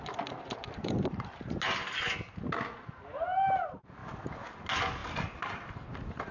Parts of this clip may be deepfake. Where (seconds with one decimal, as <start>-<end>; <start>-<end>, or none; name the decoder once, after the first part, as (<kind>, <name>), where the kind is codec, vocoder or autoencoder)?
none